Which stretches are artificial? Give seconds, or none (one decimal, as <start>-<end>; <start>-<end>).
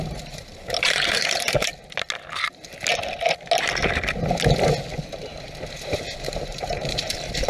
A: 0.0-1.7; 6.2-7.5